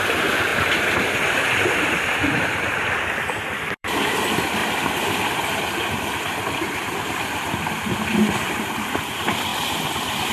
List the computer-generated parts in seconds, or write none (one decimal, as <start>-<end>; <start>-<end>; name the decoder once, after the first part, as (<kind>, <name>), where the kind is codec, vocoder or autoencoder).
0.0-0.5 (vocoder, BigVGAN v2); 1.5-4.6; 8.9-10.3